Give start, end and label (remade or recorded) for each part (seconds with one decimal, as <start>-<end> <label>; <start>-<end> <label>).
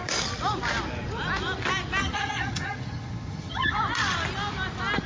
0.0-2.0 recorded; 2.0-3.7 remade; 3.7-5.1 recorded